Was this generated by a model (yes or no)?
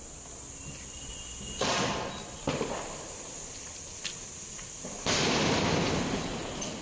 no